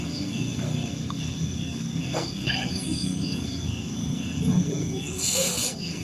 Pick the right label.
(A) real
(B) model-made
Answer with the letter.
B